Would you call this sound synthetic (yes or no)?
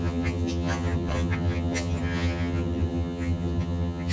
yes